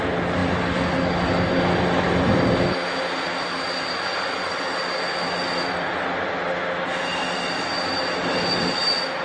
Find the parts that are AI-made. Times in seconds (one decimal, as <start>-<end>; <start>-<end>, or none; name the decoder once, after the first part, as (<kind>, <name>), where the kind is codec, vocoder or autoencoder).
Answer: none